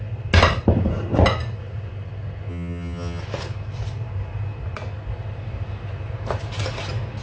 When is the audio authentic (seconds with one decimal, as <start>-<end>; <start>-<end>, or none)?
0.0-2.5; 3.2-7.2